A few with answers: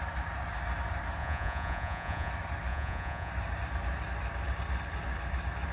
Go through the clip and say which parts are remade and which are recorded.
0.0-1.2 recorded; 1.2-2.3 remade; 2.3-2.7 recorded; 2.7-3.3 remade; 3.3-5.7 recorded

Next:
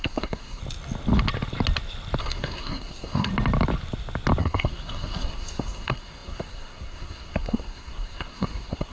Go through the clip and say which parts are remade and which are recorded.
0.0-0.6 remade; 0.6-2.2 recorded; 2.2-3.3 remade; 3.3-4.4 recorded; 4.4-8.9 remade

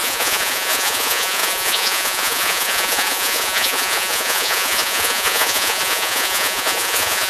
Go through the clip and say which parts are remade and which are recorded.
0.0-7.3 remade

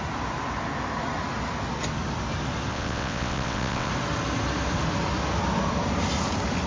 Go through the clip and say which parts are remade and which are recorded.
0.0-2.7 recorded; 2.7-3.9 remade; 3.9-6.7 recorded

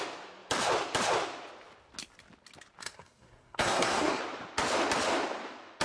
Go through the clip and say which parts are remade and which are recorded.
0.0-2.8 recorded; 2.8-4.2 remade; 4.2-5.8 recorded

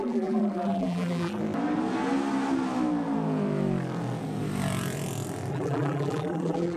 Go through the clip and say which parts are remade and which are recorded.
0.0-1.4 remade; 1.4-5.5 recorded; 5.5-6.8 remade